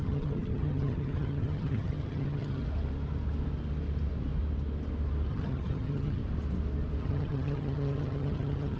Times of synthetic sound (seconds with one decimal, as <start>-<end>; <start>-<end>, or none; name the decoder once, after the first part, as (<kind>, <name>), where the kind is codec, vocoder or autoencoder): 0.0-2.6 (vocoder, HiFi-GAN); 5.3-6.2; 7.0-8.8